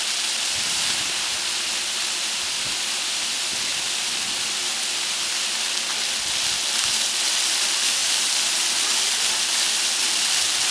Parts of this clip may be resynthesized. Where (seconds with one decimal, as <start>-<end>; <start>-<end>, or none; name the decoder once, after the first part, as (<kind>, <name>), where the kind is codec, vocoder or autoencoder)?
none